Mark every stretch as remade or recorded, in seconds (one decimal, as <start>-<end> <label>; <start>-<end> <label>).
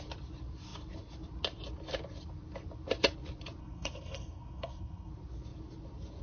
0.0-3.6 recorded; 3.6-5.1 remade; 5.1-6.2 recorded